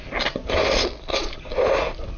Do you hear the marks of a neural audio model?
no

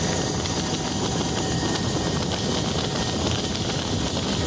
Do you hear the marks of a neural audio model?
no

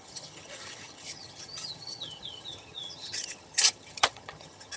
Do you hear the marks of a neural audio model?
yes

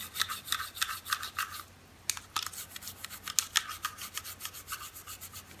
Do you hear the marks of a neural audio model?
no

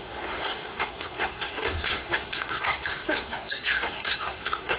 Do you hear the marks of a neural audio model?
yes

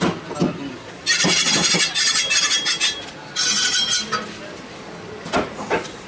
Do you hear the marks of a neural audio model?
no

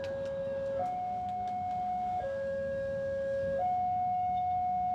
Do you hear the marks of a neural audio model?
yes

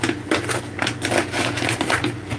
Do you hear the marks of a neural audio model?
no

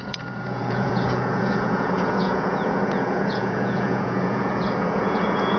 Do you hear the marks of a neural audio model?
yes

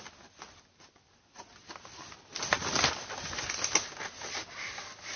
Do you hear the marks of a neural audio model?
no